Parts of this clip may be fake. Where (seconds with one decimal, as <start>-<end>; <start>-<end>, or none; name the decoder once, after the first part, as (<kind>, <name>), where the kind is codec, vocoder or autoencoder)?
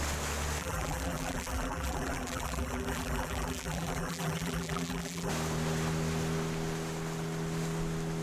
0.6-5.3 (vocoder, BigVGAN v2)